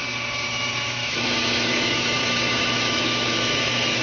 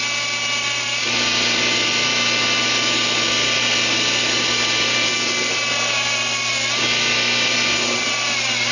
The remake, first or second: first